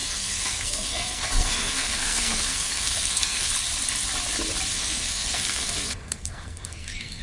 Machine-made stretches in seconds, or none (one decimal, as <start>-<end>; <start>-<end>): 0.0-3.5; 4.7-7.2